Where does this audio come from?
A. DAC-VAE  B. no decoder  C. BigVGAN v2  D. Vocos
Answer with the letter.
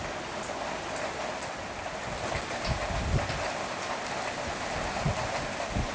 B